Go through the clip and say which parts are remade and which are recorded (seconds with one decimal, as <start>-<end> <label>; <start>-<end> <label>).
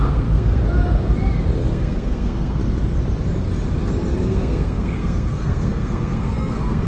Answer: 0.0-0.6 remade; 0.6-1.7 recorded; 1.7-2.6 remade; 2.6-4.3 recorded; 4.3-6.9 remade